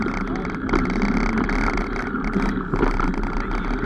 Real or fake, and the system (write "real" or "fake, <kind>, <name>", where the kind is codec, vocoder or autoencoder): real